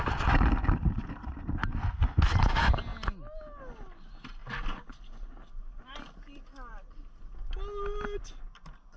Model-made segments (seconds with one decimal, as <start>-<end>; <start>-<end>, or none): none

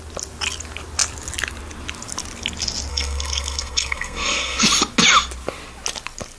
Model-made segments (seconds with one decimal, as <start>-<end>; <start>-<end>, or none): 2.9-4.6